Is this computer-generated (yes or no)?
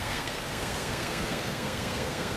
yes